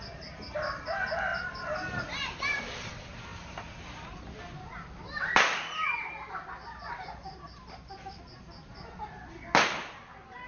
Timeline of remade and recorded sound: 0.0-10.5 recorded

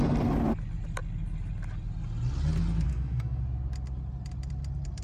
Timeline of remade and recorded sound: 0.0-2.9 recorded; 2.9-3.4 remade; 3.4-5.0 recorded

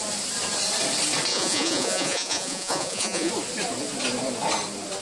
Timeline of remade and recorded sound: 0.0-1.3 recorded; 1.3-3.3 remade; 3.3-5.0 recorded

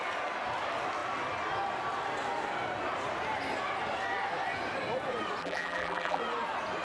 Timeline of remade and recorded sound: 0.0-5.4 recorded; 5.4-6.2 remade; 6.2-6.8 recorded

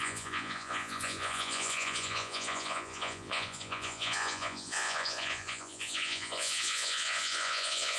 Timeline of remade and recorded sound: 0.0-8.0 remade

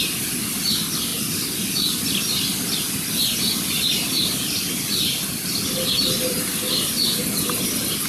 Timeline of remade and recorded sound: 0.0-1.1 recorded; 1.1-2.0 remade; 2.0-8.1 recorded

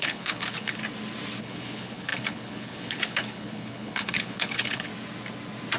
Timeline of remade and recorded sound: 0.0-0.8 remade; 0.8-1.4 recorded; 1.4-4.9 remade; 4.9-5.8 recorded

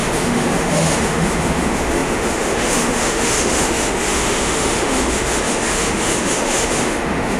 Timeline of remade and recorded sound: 0.0-7.4 remade